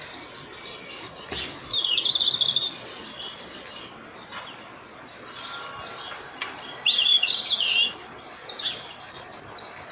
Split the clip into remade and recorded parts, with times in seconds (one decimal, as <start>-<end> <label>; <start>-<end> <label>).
0.0-9.9 recorded